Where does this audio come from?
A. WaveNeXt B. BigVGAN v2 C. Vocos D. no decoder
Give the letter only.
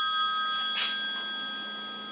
D